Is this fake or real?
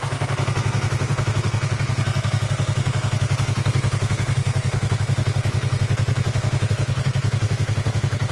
fake